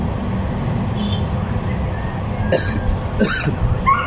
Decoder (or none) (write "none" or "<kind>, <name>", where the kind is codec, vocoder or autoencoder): none